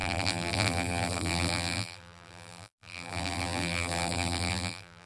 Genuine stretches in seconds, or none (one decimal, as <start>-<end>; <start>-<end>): none